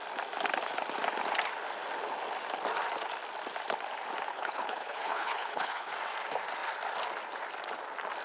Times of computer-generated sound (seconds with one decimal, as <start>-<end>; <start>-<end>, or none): 4.3-5.9